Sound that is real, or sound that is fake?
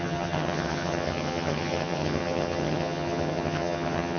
fake